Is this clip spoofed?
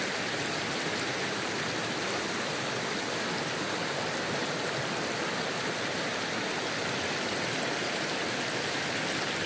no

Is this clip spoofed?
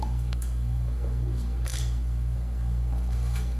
yes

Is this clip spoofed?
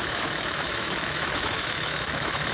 yes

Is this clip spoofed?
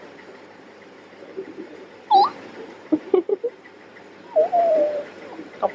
yes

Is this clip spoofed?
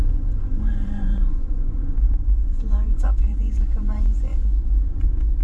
yes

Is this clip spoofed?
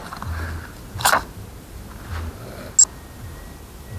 no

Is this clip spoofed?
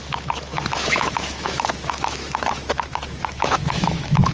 yes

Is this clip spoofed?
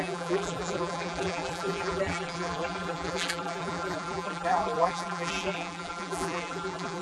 yes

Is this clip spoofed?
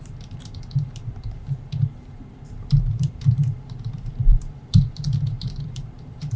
yes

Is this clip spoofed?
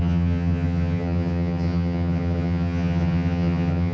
yes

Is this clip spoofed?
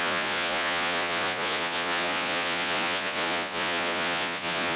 yes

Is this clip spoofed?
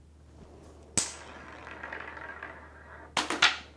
no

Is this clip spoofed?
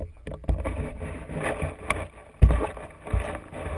no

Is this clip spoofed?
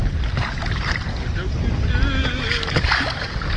no